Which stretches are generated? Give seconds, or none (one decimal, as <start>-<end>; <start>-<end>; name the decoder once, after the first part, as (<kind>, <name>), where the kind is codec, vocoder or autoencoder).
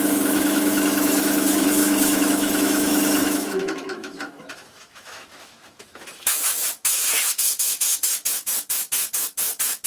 0.0-9.9 (autoencoder, DAC-VAE)